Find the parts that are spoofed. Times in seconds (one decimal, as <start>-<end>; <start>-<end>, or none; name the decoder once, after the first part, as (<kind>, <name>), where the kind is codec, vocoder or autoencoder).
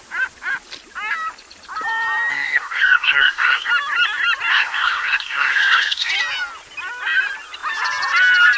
2.3-3.7 (codec, SNAC); 4.5-6.1